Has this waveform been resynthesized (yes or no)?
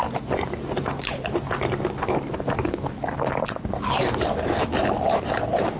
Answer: no